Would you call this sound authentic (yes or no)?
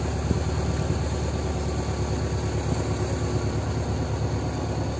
yes